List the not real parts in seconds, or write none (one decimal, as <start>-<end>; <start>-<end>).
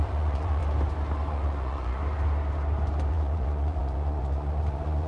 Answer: 0.0-0.6; 1.3-2.0; 3.1-5.1